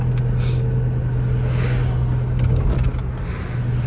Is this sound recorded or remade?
recorded